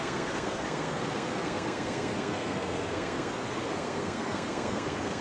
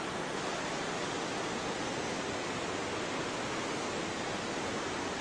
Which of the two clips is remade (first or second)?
first